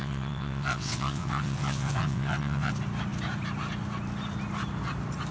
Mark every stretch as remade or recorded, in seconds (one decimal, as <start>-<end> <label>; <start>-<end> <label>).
0.0-2.7 remade; 2.7-5.3 recorded